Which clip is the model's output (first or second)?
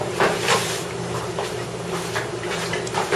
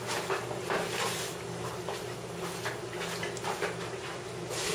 first